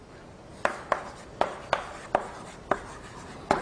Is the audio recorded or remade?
recorded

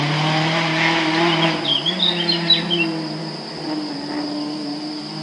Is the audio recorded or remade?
recorded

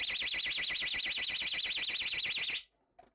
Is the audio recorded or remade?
recorded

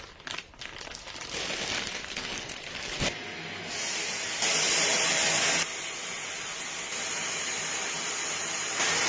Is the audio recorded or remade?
recorded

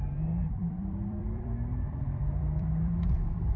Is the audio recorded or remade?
remade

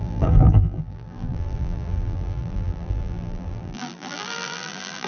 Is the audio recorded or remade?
remade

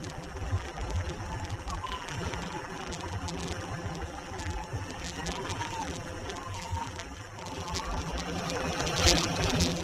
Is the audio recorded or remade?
remade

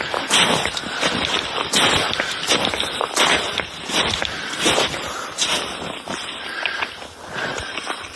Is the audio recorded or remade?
remade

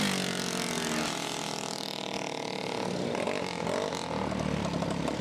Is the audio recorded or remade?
recorded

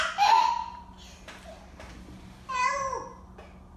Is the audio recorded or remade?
recorded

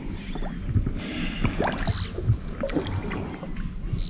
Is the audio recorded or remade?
recorded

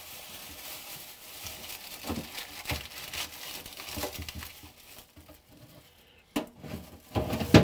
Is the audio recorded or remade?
recorded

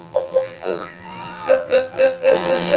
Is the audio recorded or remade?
remade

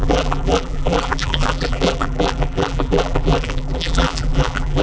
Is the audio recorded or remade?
remade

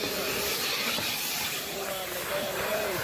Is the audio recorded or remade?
remade